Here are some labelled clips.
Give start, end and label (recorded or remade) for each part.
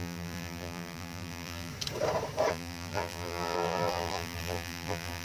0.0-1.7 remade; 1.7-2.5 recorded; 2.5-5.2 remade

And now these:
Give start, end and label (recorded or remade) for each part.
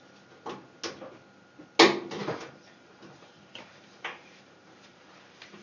0.0-2.2 recorded; 2.2-5.6 remade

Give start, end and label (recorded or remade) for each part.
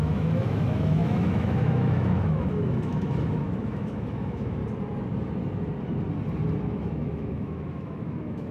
0.0-4.6 remade; 4.6-6.6 recorded; 6.6-8.5 remade